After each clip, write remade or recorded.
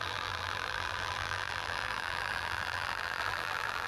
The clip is remade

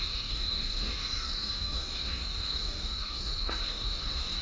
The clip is remade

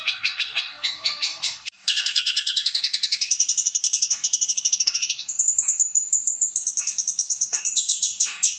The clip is remade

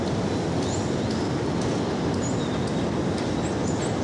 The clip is recorded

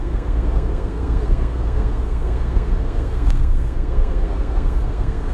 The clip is remade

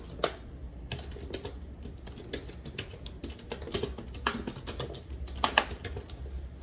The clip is recorded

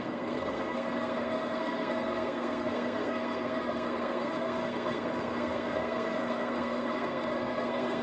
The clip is remade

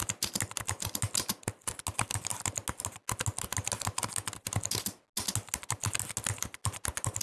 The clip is recorded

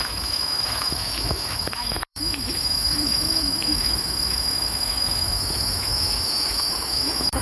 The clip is remade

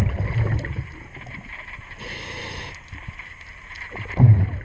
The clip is recorded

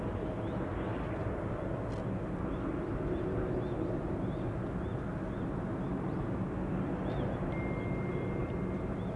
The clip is recorded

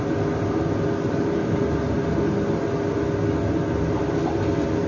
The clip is recorded